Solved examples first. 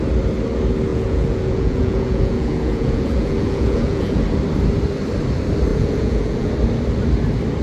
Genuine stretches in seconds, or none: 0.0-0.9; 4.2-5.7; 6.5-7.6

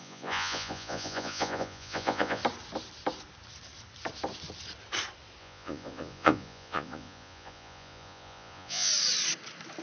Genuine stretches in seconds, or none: 2.4-5.4; 8.9-9.8